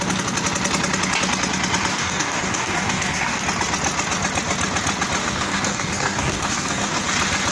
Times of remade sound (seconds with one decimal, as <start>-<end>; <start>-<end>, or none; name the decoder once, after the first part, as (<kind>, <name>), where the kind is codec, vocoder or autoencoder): 1.9-3.4 (codec, DAC); 5.2-7.0